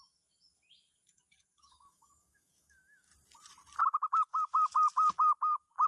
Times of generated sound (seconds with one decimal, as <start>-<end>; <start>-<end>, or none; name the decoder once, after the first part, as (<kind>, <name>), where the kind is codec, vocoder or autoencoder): 0.0-3.1 (autoencoder, DAC-VAE); 3.8-4.3